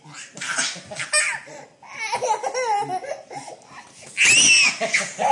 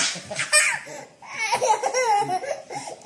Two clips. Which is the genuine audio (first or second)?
first